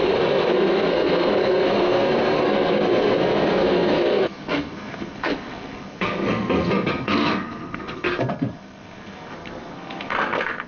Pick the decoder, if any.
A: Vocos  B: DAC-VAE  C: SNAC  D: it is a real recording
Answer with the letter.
C